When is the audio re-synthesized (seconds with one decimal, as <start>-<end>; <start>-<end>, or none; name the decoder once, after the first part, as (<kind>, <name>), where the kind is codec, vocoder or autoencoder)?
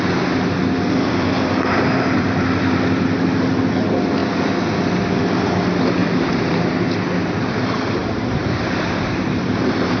6.0-6.7 (vocoder, BigVGAN v2); 8.0-10.0